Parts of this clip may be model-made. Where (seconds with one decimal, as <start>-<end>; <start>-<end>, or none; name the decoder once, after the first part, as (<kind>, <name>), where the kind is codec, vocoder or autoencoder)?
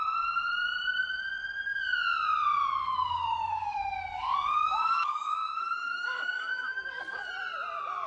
2.8-7.3 (codec, DAC)